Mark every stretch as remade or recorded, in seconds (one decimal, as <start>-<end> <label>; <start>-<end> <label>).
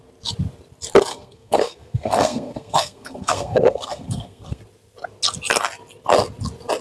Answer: 0.0-1.1 recorded; 1.1-4.6 remade; 4.6-6.8 recorded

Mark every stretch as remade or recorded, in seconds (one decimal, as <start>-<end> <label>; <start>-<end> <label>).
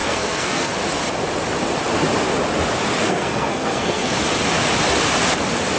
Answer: 0.0-0.7 remade; 0.7-3.0 recorded; 3.0-4.1 remade; 4.1-5.8 recorded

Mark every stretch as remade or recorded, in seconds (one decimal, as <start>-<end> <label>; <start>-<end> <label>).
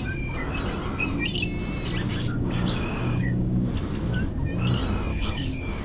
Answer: 0.0-2.1 recorded; 2.1-3.7 remade; 3.7-5.1 recorded; 5.1-5.8 remade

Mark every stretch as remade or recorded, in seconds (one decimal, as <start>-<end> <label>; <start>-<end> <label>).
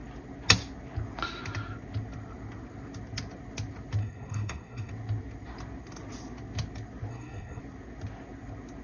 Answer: 0.0-4.0 recorded; 4.0-4.9 remade; 4.9-7.1 recorded; 7.1-7.6 remade; 7.6-8.8 recorded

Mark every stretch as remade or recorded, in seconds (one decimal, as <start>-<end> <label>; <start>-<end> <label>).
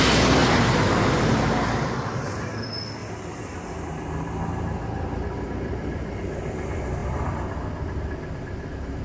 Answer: 0.0-9.0 recorded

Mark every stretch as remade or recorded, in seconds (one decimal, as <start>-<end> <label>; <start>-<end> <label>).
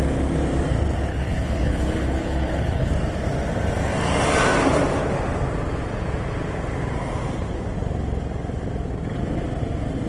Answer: 0.0-1.1 recorded; 1.1-2.9 remade; 2.9-10.1 recorded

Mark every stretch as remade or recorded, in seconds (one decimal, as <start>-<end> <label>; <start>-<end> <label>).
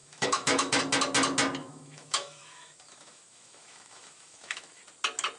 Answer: 0.0-0.8 remade; 0.8-1.6 recorded; 1.6-4.8 remade; 4.8-5.4 recorded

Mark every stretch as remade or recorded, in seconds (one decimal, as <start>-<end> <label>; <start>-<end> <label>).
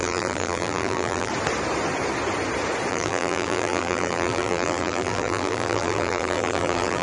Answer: 0.0-1.3 remade; 1.3-2.9 recorded; 2.9-7.0 remade